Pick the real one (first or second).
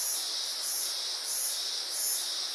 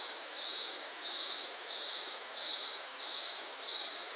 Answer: first